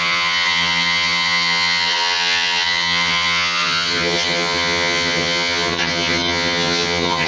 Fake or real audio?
fake